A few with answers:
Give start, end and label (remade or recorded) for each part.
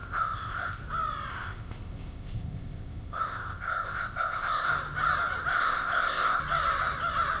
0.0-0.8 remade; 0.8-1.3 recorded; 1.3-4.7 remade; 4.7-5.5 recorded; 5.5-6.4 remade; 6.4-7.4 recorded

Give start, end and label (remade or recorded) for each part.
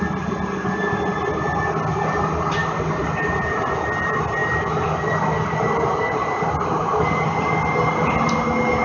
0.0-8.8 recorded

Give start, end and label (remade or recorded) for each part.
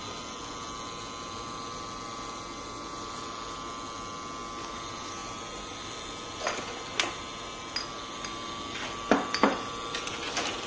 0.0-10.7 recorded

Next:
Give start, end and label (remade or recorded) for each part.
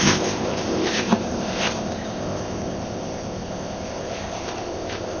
0.0-5.2 remade